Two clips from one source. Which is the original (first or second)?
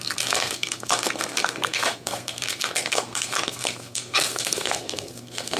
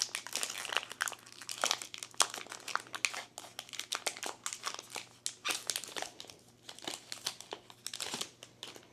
second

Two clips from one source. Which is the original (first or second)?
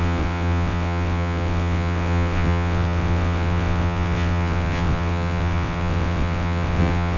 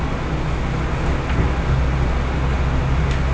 second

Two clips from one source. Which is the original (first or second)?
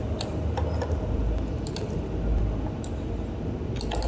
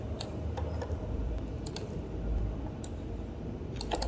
first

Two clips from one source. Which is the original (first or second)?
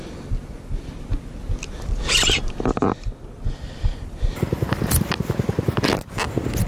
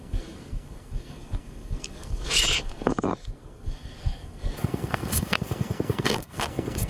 first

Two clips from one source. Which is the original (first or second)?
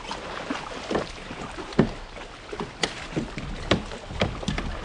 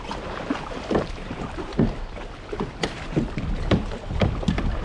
first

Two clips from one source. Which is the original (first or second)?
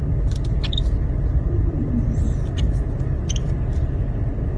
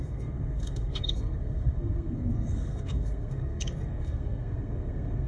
first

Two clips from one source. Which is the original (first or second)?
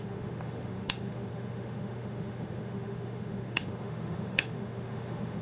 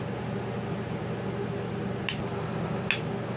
second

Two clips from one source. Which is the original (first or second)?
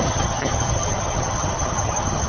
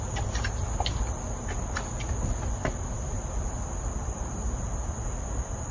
second